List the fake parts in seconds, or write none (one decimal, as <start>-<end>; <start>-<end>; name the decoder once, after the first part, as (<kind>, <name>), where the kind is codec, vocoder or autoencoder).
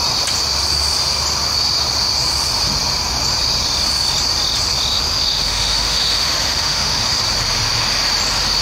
4.9-7.2 (autoencoder, DAC-VAE)